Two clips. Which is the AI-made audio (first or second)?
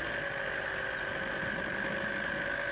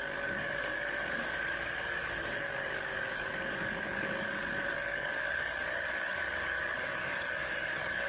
second